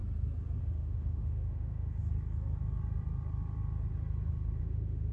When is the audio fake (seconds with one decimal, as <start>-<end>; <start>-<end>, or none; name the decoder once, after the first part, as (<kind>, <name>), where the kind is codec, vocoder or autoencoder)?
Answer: 0.6-2.0 (autoencoder, DAC-VAE); 4.6-5.1